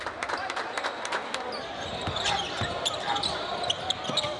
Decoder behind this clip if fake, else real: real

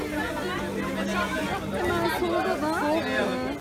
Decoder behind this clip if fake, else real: real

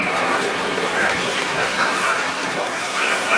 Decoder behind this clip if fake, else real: fake, codec, SNAC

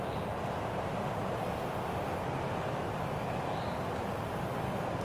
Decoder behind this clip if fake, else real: real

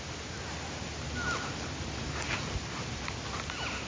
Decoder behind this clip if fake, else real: real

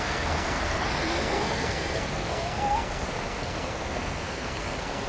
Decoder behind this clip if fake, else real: fake, codec, SNAC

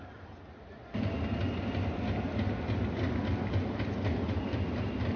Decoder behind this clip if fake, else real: real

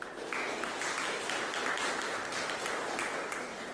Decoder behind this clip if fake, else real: real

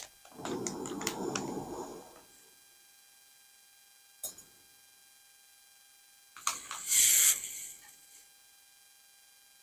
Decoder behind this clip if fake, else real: real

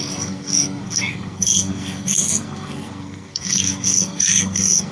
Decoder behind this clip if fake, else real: fake, codec, SNAC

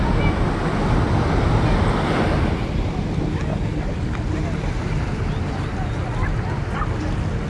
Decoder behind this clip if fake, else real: real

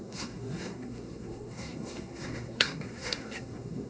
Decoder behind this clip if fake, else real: fake, codec, SNAC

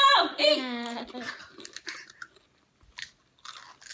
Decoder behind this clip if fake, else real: real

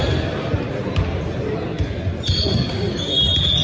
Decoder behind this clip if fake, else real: real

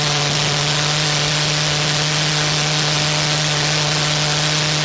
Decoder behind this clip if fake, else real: real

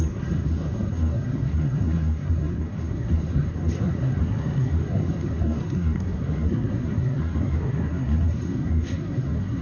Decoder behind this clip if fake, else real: fake, codec, SNAC